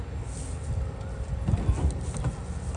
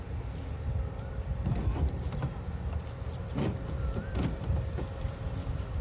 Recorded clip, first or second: first